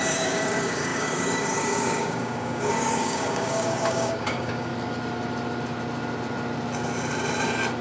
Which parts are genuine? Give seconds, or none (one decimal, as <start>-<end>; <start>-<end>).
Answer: 4.7-7.8